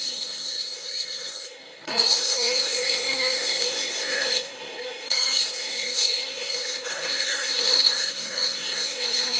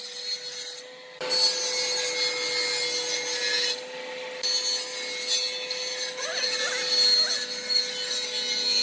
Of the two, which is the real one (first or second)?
second